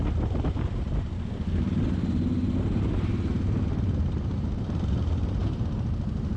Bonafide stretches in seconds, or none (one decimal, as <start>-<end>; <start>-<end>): 0.0-2.4; 5.6-6.4